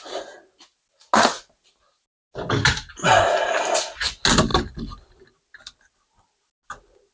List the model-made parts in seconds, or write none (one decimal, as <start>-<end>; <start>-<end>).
none